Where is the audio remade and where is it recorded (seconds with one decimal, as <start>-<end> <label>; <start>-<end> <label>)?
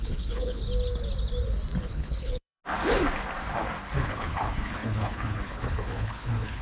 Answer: 0.0-0.6 remade; 0.6-1.8 recorded; 1.8-2.6 remade; 2.6-4.0 recorded; 4.0-6.6 remade